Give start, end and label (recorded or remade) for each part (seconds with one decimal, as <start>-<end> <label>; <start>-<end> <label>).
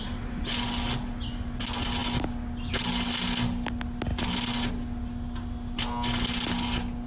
0.0-7.1 recorded